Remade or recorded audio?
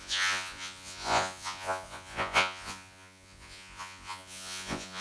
remade